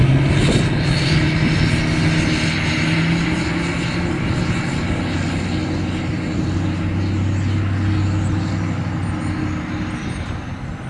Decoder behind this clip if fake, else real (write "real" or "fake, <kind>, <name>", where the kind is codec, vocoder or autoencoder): real